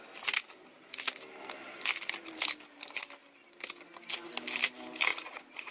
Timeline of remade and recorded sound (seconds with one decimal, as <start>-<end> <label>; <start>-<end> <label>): 0.0-5.1 recorded; 5.1-5.7 remade